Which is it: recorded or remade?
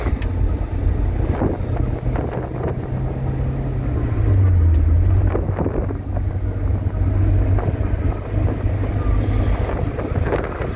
recorded